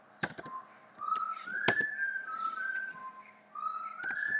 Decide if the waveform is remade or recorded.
recorded